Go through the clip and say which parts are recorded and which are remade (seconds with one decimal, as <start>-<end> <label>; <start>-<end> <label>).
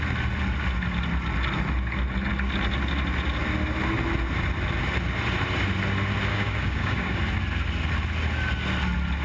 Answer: 0.0-6.3 recorded; 6.3-7.2 remade; 7.2-9.2 recorded